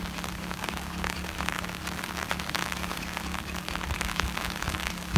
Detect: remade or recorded remade